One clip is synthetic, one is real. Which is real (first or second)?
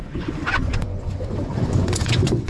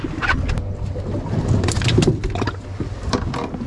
second